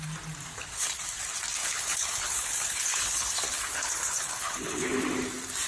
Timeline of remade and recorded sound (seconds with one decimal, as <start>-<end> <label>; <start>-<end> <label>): 0.0-0.5 recorded; 0.5-1.0 remade; 1.0-1.6 recorded; 1.6-5.0 remade; 5.0-5.7 recorded